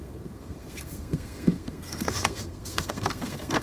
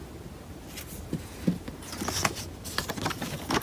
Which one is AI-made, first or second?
first